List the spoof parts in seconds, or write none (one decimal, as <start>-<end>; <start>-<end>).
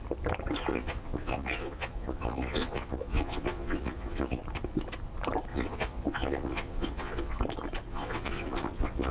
0.7-4.4; 5.5-7.4; 7.9-9.1